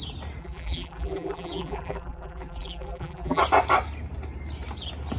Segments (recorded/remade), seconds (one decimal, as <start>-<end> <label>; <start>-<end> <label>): 0.0-0.4 recorded; 0.4-3.4 remade; 3.4-5.2 recorded